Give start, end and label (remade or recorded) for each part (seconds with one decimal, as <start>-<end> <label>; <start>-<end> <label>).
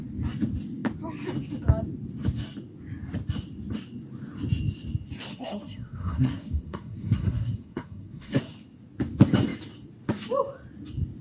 0.0-5.3 recorded; 5.3-8.4 remade; 8.4-11.2 recorded